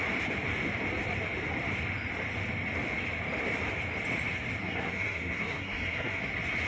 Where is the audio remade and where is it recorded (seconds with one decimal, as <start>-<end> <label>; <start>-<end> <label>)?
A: 0.0-4.6 recorded; 4.6-6.2 remade; 6.2-6.7 recorded